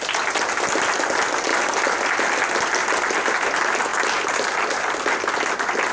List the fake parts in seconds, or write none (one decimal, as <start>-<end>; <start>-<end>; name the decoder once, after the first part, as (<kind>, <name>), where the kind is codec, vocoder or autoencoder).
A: none